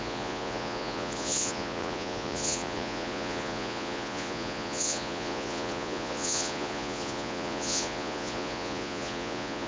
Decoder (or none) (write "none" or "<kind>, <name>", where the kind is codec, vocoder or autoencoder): vocoder, Vocos